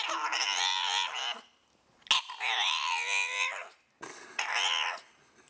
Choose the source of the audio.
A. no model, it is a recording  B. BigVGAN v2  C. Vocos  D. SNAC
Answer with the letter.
A